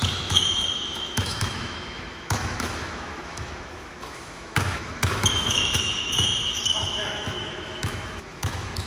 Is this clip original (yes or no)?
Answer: no